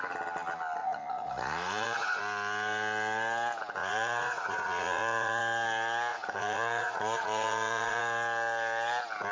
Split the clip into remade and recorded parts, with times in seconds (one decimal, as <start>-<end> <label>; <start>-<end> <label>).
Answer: 0.0-0.8 recorded; 0.8-2.2 remade; 2.2-3.8 recorded; 3.8-5.4 remade; 5.4-6.1 recorded; 6.1-8.0 remade; 8.0-9.3 recorded